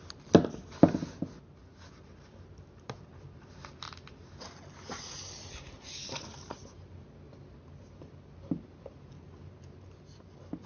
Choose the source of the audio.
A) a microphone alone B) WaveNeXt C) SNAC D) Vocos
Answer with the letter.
A